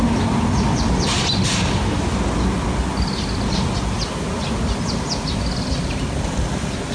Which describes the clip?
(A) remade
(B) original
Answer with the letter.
B